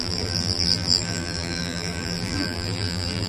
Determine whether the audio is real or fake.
fake